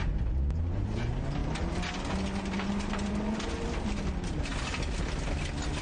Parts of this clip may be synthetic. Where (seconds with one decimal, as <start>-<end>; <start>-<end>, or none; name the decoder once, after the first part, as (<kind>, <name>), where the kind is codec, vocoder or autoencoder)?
none